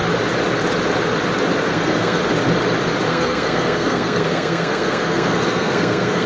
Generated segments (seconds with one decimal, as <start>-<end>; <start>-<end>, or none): 1.7-2.2; 3.1-6.3